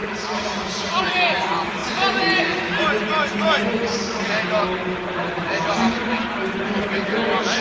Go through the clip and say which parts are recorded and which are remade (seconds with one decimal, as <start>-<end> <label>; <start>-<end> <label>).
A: 0.0-1.0 remade; 1.0-7.6 recorded